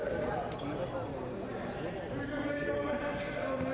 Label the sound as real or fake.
real